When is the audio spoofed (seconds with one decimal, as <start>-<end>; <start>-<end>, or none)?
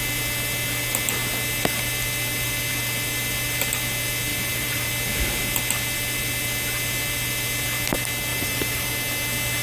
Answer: 4.3-4.9; 8.3-8.9